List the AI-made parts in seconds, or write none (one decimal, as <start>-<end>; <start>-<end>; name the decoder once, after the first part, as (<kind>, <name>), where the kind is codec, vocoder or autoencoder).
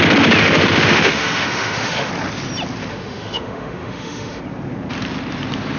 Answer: 0.4-2.1 (autoencoder, DAC-VAE); 2.9-4.4